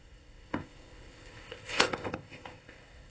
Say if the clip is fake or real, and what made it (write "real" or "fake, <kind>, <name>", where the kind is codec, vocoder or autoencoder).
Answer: fake, codec, ZipCodec